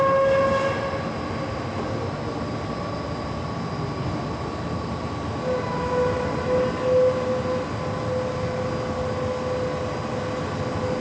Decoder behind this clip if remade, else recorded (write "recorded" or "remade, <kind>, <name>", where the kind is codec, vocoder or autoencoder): recorded